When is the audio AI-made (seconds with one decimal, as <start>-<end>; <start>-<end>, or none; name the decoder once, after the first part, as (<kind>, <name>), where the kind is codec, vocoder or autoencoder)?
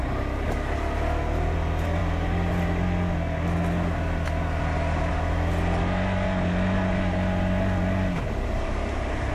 none